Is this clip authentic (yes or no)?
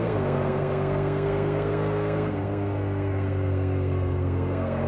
no